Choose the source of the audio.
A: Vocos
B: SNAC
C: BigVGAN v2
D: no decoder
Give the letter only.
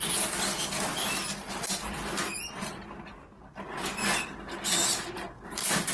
D